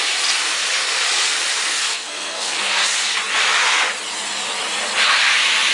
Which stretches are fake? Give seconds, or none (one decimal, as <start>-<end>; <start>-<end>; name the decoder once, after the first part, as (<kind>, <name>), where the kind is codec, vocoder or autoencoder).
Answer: 1.7-2.7 (codec, SNAC)